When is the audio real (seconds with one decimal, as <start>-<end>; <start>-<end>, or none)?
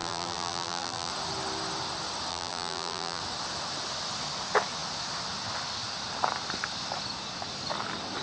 1.1-2.3; 3.2-8.2